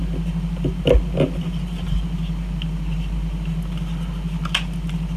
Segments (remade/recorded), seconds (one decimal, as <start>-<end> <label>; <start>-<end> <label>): 0.0-5.2 recorded